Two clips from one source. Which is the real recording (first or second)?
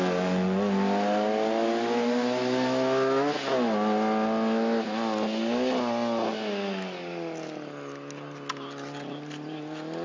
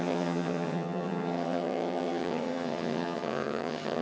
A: first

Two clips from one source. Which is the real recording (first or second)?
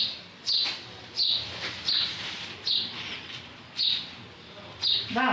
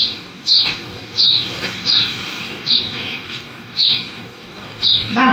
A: first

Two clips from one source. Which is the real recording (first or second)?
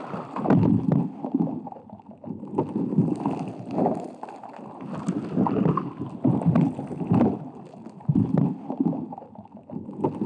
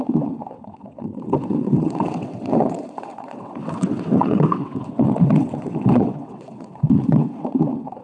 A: first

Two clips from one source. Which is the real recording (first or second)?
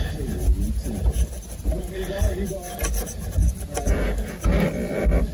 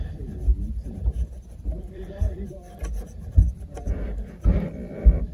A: first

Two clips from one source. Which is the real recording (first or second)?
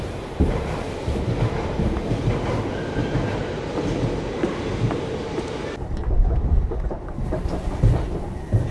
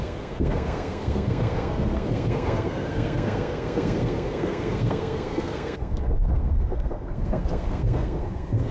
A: first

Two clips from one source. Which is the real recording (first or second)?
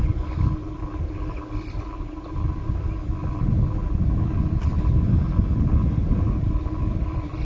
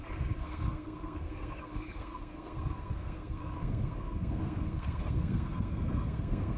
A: first